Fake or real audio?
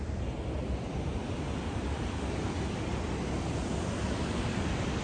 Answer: real